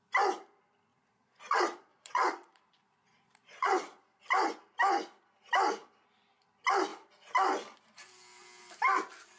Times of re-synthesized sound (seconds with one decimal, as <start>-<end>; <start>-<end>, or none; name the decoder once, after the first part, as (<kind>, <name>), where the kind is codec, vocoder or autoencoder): 0.9-4.2 (vocoder, Vocos)